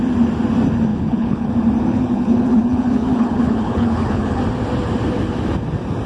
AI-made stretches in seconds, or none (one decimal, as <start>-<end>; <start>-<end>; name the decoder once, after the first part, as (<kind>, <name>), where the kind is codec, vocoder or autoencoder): 0.9-1.5 (codec, HILCodec); 1.9-4.4